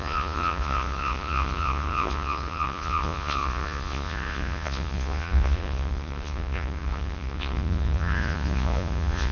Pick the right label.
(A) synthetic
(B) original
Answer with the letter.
A